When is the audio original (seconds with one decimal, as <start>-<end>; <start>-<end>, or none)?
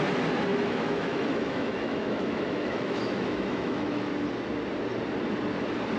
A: 0.0-0.5; 4.1-6.0